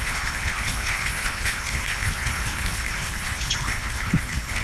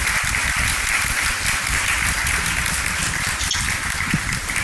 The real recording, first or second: second